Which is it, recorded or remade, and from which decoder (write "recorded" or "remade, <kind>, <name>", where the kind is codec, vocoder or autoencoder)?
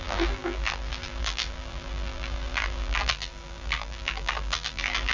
remade, vocoder, BigVGAN v2